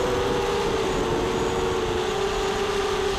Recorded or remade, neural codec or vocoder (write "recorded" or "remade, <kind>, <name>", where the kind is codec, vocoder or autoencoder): recorded